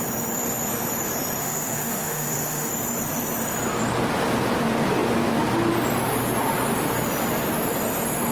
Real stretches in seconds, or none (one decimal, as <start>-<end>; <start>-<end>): 0.0-1.4; 2.7-8.3